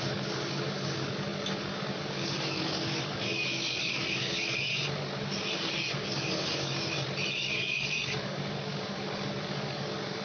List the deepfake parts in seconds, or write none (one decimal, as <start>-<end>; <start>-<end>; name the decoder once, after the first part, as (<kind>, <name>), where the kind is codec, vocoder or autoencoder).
0.0-4.7 (codec, DAC); 5.6-6.7; 7.3-10.2